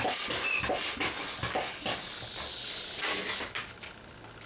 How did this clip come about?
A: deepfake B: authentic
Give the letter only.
B